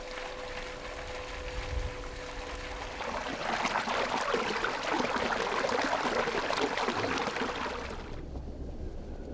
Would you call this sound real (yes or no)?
yes